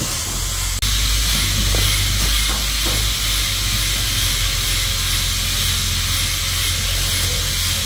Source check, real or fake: real